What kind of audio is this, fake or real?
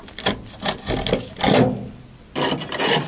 real